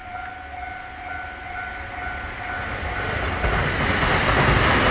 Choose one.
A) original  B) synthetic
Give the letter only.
A